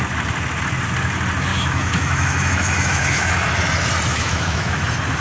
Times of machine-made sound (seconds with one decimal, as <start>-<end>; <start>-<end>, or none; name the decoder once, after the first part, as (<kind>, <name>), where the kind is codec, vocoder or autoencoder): 1.5-3.3 (autoencoder, DAC-VAE); 4.1-4.8